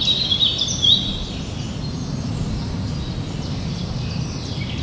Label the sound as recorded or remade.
recorded